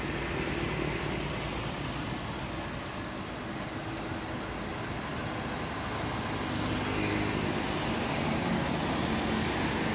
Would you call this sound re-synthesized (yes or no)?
no